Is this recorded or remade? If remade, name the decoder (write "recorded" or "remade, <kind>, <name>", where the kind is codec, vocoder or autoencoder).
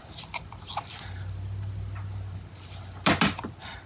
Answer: recorded